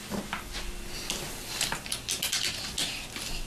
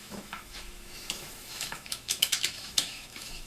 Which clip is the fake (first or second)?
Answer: second